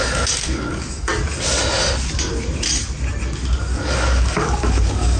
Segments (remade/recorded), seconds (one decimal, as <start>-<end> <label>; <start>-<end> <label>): 0.0-1.1 remade; 1.1-3.6 recorded; 3.6-5.2 remade